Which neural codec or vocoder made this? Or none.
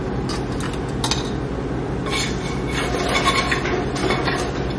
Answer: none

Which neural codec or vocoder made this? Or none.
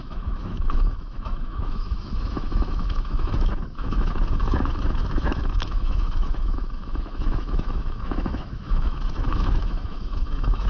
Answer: autoencoder, DAC-VAE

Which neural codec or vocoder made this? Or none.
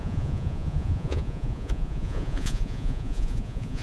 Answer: vocoder, Vocos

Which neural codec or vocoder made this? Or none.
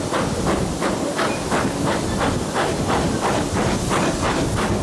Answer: none